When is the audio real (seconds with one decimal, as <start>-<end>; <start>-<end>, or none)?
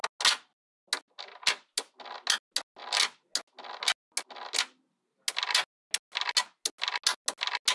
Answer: 0.0-7.7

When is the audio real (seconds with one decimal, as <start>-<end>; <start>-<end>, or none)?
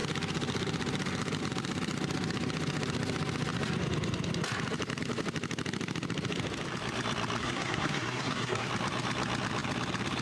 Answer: 0.0-7.4; 8.7-10.2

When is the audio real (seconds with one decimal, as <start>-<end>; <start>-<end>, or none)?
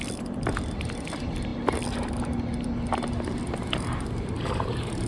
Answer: 0.0-5.1